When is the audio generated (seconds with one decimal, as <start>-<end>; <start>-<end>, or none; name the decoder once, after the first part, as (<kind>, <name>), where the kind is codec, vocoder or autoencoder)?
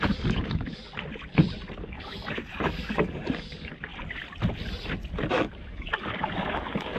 0.0-0.8 (codec, DAC); 1.8-3.9; 5.3-7.0